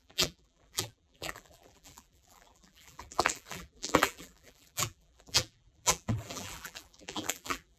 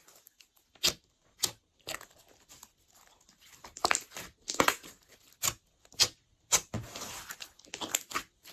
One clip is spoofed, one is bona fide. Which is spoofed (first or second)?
first